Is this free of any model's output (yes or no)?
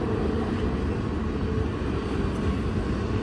yes